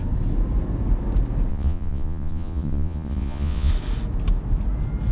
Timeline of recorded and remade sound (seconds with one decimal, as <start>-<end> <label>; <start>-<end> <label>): 0.0-1.5 recorded; 1.5-3.7 remade; 3.7-5.1 recorded